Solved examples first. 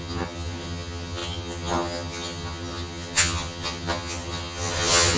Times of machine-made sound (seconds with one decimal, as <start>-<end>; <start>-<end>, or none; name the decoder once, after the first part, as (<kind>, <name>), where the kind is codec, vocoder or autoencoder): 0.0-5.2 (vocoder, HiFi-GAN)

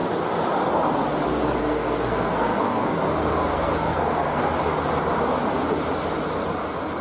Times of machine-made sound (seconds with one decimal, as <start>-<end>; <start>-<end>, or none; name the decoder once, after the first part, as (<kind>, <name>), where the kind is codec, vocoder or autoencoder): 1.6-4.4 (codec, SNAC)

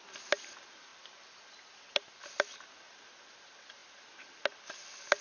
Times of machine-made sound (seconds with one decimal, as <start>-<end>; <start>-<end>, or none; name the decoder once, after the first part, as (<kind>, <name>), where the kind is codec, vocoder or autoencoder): none

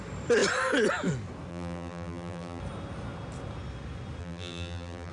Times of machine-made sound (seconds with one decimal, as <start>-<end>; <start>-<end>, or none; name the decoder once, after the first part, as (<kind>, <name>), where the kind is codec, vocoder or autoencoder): 1.5-2.6 (vocoder, BigVGAN v2); 4.2-5.1

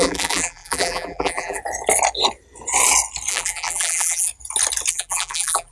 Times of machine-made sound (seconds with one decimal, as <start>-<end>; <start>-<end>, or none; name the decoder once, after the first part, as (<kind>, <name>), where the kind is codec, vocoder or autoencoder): 0.0-1.6 (vocoder, BigVGAN v2); 3.3-4.3; 4.9-5.7

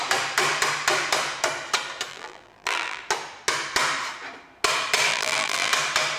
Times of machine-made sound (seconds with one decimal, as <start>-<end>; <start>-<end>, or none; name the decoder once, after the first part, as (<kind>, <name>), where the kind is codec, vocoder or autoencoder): 2.1-3.0 (vocoder, BigVGAN v2); 5.1-5.7